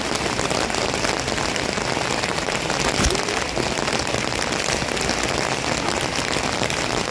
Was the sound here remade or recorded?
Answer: recorded